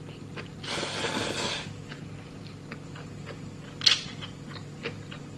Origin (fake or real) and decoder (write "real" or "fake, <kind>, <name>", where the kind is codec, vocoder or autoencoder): real